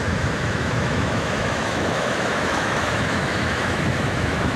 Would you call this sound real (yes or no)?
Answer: no